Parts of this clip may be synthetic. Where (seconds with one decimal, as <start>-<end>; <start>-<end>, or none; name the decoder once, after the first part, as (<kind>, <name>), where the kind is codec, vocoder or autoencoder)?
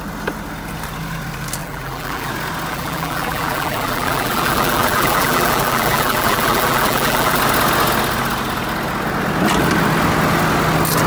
1.6-2.3 (vocoder, BigVGAN v2); 2.7-7.4